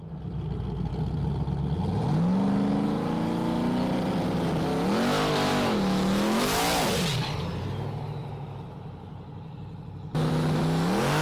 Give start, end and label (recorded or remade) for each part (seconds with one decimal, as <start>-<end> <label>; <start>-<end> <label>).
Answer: 0.0-5.5 recorded; 5.5-6.4 remade; 6.4-11.2 recorded